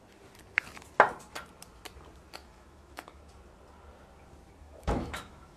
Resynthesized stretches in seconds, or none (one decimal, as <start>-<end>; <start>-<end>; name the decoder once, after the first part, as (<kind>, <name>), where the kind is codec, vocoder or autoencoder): 2.4-3.3 (autoencoder, DAC-VAE); 4.6-5.6